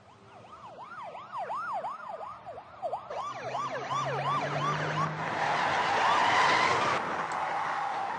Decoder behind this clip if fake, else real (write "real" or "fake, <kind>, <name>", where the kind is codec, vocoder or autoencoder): real